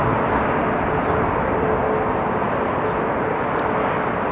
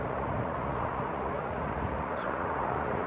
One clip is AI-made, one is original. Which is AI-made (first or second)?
second